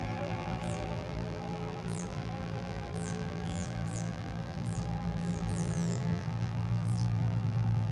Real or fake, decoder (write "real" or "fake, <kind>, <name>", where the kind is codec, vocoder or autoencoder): fake, vocoder, BigVGAN v2